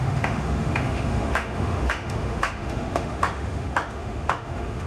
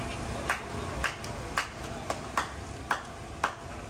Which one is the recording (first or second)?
second